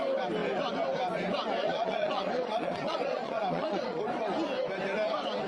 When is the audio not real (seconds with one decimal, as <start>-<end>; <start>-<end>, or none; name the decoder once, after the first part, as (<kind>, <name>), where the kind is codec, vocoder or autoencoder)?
1.6-4.0 (vocoder, Vocos)